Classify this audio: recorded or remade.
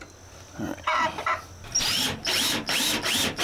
recorded